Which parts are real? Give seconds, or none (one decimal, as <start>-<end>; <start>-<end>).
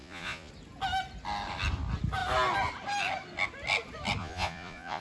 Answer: 0.5-4.2